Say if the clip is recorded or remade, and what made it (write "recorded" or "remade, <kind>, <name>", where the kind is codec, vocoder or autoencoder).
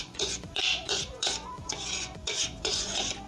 remade, vocoder, Vocos